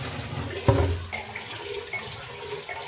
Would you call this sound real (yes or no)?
yes